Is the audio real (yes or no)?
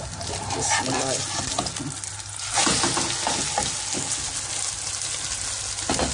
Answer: yes